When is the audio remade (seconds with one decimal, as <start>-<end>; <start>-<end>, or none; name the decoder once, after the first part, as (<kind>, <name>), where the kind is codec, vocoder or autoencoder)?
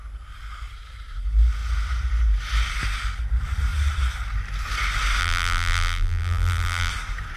5.2-6.9 (vocoder, BigVGAN v2)